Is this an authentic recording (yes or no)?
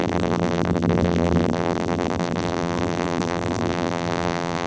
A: no